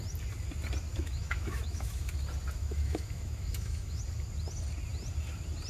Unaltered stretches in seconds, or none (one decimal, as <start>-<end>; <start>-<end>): 0.0-0.9; 2.1-2.6; 4.0-5.7